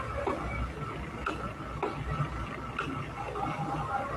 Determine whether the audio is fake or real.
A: real